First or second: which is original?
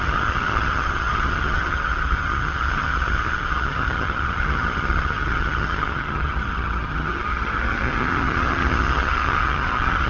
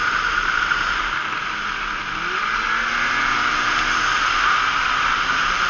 second